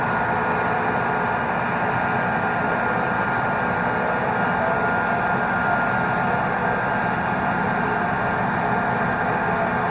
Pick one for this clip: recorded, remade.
recorded